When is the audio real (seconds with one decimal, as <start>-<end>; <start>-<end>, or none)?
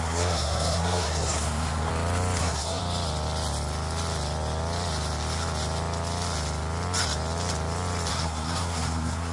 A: 1.9-2.4; 2.8-8.1